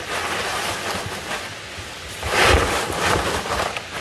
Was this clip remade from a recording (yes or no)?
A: no